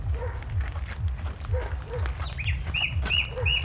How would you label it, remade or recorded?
recorded